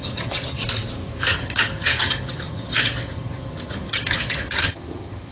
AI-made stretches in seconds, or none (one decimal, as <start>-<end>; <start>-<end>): 0.0-0.6; 1.2-5.3